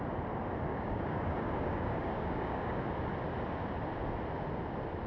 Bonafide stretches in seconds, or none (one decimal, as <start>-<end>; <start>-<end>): 0.0-0.7; 2.8-5.1